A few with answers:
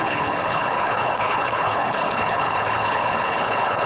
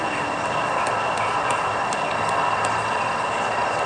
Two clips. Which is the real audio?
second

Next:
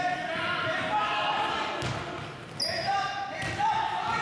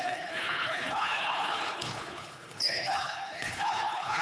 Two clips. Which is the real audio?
first